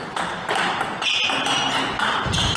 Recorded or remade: recorded